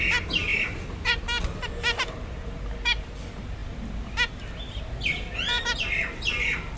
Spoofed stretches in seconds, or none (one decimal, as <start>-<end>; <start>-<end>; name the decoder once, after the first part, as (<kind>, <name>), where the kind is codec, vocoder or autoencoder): none